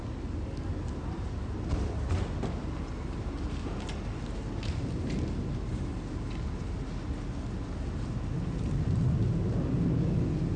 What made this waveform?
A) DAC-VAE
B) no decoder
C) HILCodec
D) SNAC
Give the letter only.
B